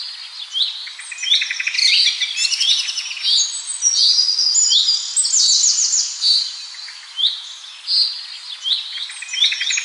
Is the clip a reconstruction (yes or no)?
no